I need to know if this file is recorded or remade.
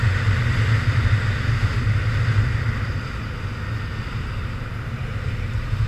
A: recorded